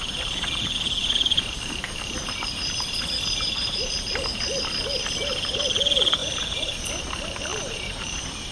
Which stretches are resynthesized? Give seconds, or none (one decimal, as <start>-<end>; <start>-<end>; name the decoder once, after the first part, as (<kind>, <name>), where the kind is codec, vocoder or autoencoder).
1.0-4.4 (vocoder, BigVGAN v2); 6.2-7.0; 7.5-8.5